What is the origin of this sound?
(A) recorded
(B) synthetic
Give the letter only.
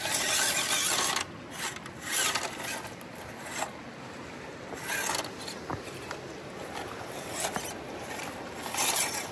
A